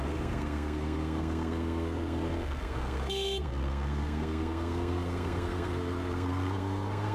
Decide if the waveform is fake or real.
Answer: fake